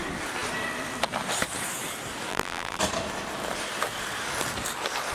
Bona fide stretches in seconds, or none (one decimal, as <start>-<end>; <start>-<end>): 0.0-2.3; 2.8-5.1